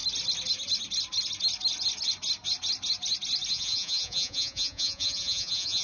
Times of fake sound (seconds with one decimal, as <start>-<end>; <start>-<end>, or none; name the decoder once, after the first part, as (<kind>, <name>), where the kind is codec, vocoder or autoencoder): 3.5-5.8 (vocoder, Vocos)